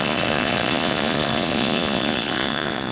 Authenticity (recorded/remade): remade